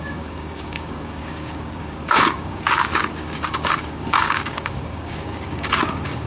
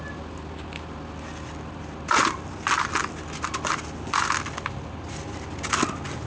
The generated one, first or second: first